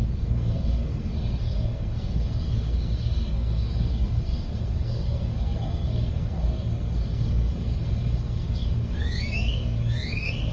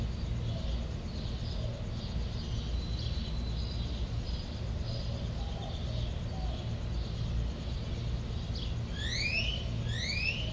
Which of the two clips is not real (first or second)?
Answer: first